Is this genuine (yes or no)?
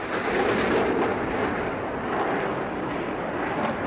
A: yes